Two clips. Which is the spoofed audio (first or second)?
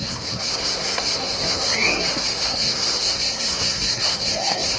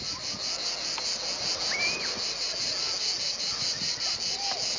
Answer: first